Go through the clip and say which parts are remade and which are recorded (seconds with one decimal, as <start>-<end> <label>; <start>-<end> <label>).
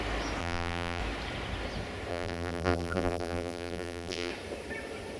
0.0-0.4 recorded; 0.4-1.0 remade; 1.0-2.1 recorded; 2.1-4.3 remade; 4.3-5.2 recorded